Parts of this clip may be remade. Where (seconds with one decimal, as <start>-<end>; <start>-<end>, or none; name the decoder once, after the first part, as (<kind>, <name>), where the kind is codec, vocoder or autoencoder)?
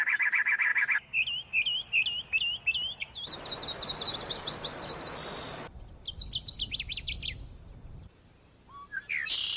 none